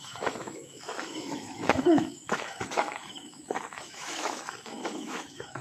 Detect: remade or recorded remade